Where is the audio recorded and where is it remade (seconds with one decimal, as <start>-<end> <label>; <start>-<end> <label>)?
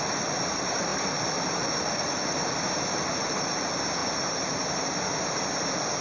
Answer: 0.0-6.0 recorded